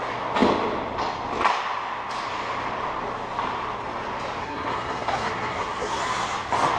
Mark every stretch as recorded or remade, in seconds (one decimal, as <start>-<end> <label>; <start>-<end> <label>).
0.0-4.4 recorded; 4.4-6.0 remade; 6.0-6.8 recorded